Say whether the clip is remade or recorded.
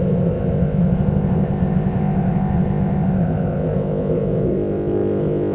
remade